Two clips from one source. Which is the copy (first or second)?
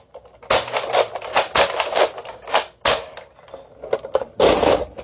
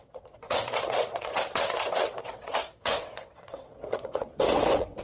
second